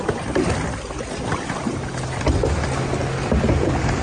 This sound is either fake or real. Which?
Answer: real